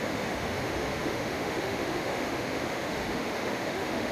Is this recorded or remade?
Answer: remade